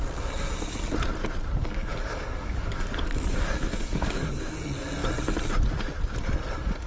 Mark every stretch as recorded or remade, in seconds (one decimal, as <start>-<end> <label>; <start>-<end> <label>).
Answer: 0.0-1.6 recorded; 1.6-4.4 remade; 4.4-6.9 recorded